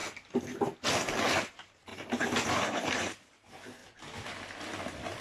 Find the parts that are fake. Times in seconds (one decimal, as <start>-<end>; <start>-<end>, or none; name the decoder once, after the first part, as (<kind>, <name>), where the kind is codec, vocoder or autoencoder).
1.4-1.9 (vocoder, BigVGAN v2); 2.5-3.8